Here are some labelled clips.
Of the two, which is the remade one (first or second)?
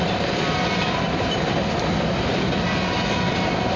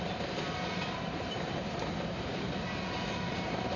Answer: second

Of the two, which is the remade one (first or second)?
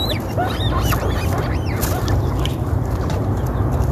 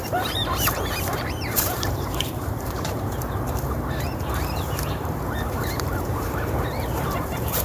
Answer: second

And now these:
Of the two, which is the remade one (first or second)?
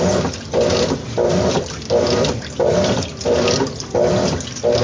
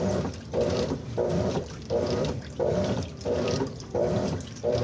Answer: second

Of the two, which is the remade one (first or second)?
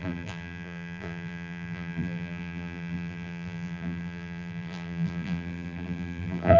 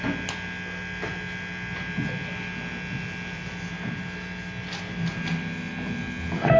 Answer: first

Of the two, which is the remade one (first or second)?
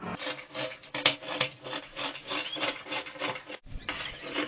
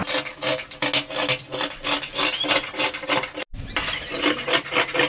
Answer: first